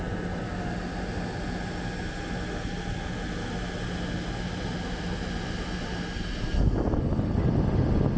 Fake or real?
real